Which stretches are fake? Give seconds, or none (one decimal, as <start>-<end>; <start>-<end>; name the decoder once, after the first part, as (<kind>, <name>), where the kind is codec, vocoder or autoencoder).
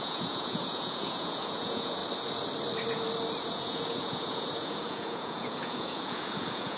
0.0-2.0 (vocoder, Vocos); 3.5-6.8